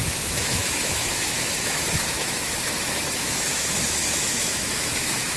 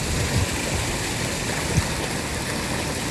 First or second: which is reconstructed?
first